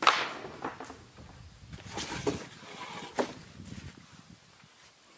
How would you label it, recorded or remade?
recorded